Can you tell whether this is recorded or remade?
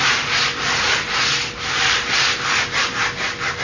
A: recorded